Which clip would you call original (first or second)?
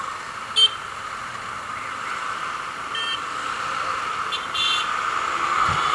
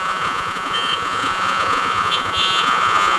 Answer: first